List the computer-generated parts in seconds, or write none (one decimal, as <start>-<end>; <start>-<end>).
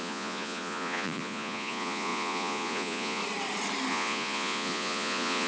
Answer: 0.0-3.2; 3.9-5.5